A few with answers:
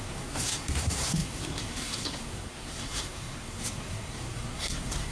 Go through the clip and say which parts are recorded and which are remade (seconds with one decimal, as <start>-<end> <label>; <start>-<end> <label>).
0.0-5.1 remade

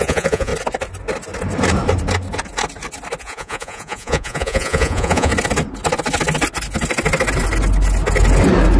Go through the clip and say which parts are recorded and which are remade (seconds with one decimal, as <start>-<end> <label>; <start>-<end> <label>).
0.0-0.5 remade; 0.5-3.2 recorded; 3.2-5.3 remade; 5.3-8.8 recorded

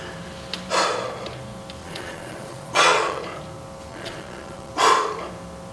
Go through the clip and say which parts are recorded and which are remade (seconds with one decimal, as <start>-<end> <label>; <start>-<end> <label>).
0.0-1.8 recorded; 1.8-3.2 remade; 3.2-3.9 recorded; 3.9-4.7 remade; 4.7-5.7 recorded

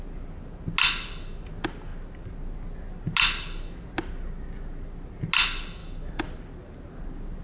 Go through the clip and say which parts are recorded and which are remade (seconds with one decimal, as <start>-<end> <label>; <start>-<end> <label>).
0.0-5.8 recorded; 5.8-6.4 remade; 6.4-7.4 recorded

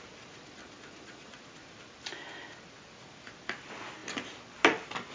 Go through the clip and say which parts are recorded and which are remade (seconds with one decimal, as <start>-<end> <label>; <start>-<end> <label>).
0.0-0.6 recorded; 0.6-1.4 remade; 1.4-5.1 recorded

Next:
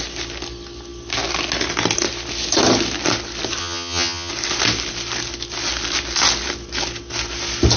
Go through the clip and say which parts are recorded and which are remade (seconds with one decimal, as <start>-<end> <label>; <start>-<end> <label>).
0.0-3.6 recorded; 3.6-4.3 remade; 4.3-7.8 recorded

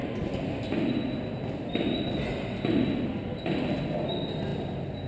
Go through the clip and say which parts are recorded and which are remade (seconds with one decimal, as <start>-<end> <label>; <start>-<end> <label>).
0.0-5.1 recorded